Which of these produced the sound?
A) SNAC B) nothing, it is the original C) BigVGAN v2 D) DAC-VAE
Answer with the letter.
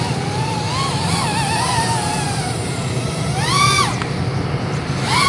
B